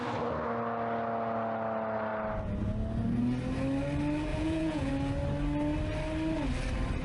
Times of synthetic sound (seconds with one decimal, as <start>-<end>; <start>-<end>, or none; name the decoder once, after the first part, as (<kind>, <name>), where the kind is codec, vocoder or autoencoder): 4.3-4.9 (vocoder, Vocos)